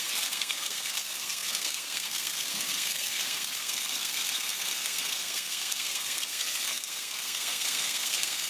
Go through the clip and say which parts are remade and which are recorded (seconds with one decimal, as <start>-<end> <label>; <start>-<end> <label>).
0.0-8.5 remade